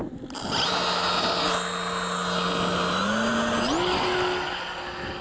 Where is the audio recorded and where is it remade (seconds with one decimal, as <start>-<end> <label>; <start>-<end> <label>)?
0.0-5.2 recorded